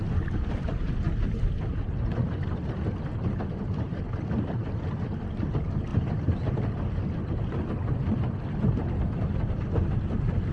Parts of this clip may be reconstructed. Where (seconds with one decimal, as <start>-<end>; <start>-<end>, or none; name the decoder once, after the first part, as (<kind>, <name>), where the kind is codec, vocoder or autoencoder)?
none